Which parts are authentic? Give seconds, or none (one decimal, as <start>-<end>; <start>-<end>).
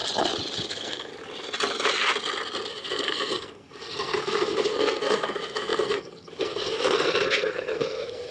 0.0-0.7; 1.1-2.7